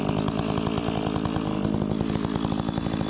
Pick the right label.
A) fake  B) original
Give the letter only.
B